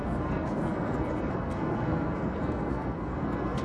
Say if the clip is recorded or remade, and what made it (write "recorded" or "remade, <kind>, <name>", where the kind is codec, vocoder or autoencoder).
remade, codec, SNAC